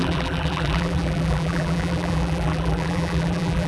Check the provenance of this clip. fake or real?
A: fake